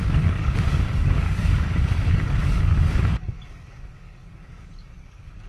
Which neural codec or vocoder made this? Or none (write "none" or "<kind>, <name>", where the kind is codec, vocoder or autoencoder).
codec, DAC